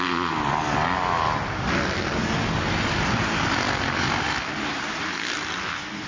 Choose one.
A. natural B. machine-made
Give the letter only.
A